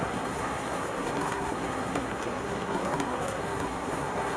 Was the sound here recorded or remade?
remade